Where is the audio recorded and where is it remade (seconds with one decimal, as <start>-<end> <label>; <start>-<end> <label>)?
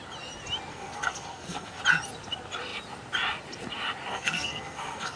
0.0-0.7 recorded; 0.7-1.8 remade; 1.8-4.1 recorded; 4.1-5.2 remade